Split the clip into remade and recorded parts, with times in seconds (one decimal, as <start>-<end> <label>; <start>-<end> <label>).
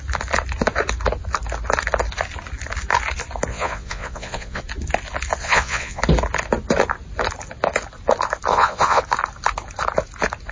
0.0-3.5 recorded; 3.5-4.6 remade; 4.6-5.4 recorded; 5.4-6.0 remade; 6.0-8.5 recorded; 8.5-9.0 remade; 9.0-10.5 recorded